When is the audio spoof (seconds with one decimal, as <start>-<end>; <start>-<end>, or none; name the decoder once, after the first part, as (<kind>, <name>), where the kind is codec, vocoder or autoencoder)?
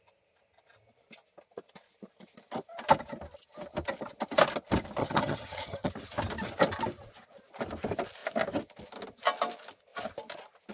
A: 5.0-5.9 (vocoder, HiFi-GAN)